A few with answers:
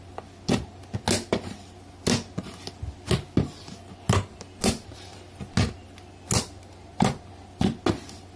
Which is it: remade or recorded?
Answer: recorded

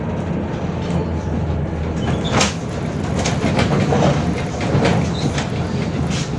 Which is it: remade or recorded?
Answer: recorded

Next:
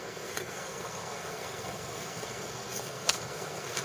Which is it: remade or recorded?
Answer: remade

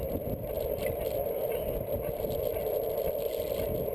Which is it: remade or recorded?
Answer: recorded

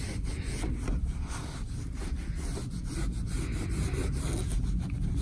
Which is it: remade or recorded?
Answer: recorded